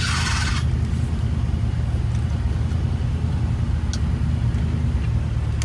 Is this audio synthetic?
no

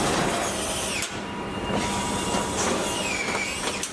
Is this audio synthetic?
no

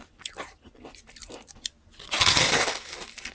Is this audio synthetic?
no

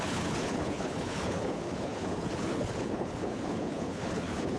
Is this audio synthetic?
yes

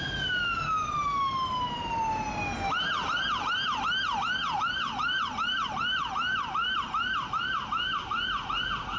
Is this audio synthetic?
no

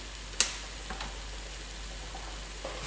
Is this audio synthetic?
no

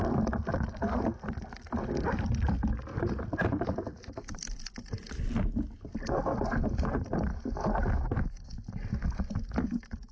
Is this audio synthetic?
no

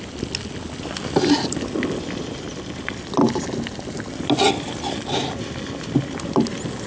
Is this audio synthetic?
no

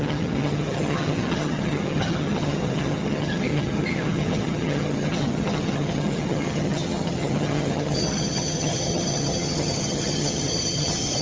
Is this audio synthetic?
yes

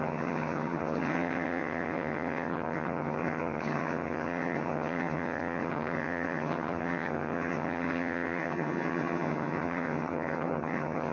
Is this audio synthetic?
yes